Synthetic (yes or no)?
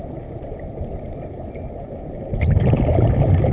no